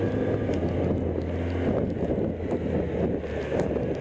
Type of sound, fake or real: real